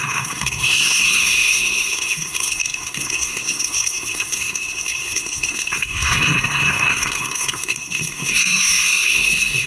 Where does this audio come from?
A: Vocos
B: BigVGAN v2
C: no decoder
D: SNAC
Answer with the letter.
D